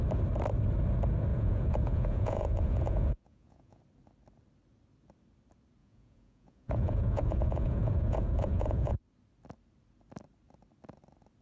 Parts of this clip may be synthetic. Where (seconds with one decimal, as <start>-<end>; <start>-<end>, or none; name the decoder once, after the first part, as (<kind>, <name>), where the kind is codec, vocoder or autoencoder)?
1.3-3.8 (vocoder, Vocos); 5.8-8.9